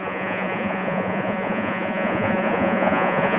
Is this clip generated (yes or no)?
yes